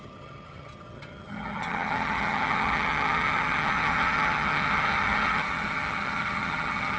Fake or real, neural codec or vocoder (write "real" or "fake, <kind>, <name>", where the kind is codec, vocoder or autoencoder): fake, vocoder, HiFi-GAN